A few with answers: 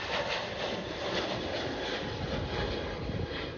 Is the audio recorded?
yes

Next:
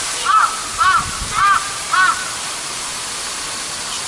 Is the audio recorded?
yes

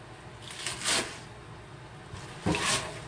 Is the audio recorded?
yes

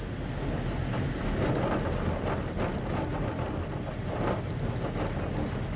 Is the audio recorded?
yes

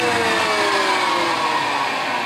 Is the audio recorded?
yes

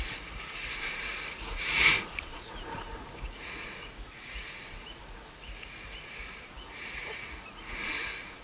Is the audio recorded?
no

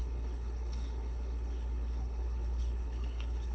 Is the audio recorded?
no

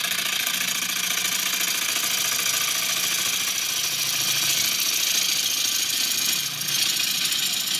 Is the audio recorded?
yes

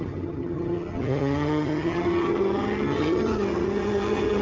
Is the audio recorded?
no